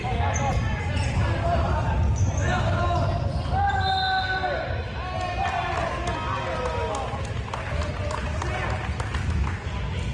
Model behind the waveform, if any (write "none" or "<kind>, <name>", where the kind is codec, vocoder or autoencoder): none